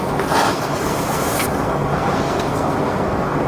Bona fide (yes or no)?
no